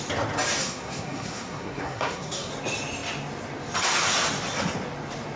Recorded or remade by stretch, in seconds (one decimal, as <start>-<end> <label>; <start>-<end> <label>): 0.0-0.6 recorded; 0.6-2.5 remade; 2.5-5.4 recorded